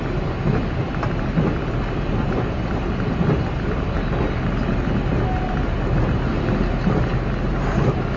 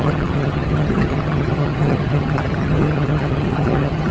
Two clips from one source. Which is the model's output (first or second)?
second